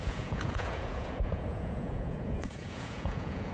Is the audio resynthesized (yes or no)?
yes